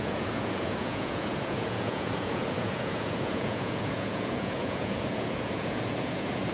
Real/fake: fake